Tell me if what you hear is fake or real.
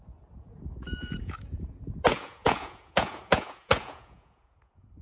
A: fake